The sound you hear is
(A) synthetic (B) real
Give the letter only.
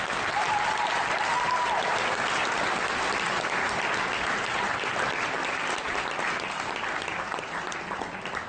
B